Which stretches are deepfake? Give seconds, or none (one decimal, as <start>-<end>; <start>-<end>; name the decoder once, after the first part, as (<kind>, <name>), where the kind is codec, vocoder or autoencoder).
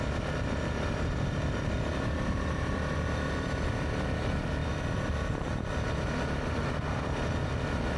none